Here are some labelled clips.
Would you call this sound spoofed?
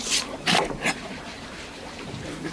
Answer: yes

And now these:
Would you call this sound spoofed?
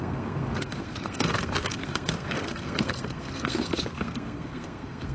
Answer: yes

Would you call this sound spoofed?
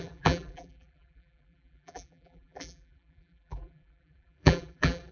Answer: yes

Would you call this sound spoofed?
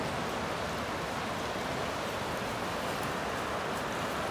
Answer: no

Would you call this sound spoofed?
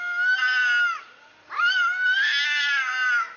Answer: no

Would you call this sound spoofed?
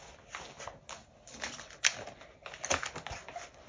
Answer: no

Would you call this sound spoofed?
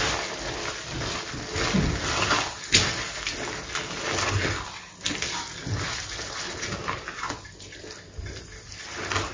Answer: no